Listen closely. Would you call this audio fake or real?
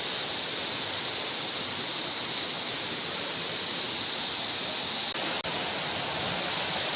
real